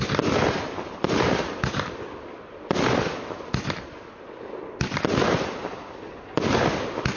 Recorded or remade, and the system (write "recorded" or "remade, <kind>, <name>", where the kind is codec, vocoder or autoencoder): recorded